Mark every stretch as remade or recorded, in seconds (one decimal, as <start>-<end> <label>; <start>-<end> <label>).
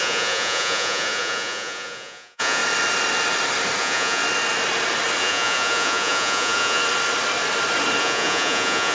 0.0-2.6 remade; 2.6-3.8 recorded; 3.8-4.2 remade; 4.2-5.2 recorded; 5.2-6.8 remade; 6.8-8.0 recorded; 8.0-8.9 remade